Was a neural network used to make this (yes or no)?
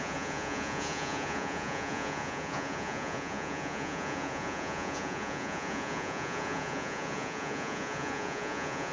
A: yes